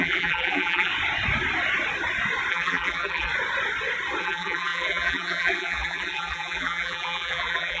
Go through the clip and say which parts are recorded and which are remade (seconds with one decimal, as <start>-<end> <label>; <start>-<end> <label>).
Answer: 0.0-0.9 remade; 0.9-2.5 recorded; 2.5-3.3 remade; 3.3-4.2 recorded; 4.2-7.8 remade